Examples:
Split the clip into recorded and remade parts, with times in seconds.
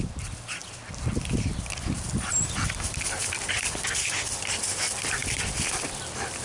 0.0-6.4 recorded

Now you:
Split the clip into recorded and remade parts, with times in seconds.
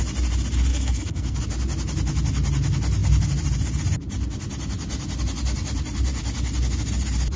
0.0-0.7 recorded; 0.7-1.4 remade; 1.4-7.4 recorded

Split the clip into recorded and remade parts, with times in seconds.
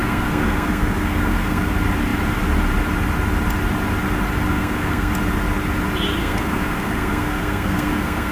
0.0-1.7 remade; 1.7-4.5 recorded; 4.5-5.1 remade; 5.1-6.2 recorded; 6.2-8.3 remade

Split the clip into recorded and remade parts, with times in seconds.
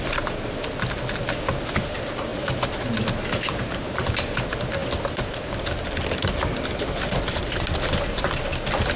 0.0-9.0 recorded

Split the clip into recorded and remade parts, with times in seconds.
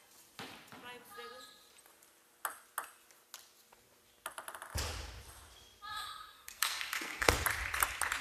0.0-5.9 recorded; 5.9-7.3 remade; 7.3-8.2 recorded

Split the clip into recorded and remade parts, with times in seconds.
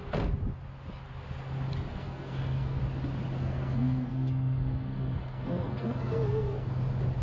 0.0-1.9 recorded; 1.9-2.8 remade; 2.8-3.4 recorded; 3.4-6.8 remade; 6.8-7.2 recorded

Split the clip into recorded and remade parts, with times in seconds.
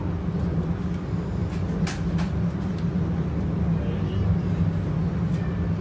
0.0-5.8 recorded